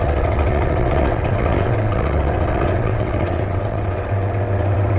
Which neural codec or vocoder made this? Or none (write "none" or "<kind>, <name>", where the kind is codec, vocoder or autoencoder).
vocoder, WaveNeXt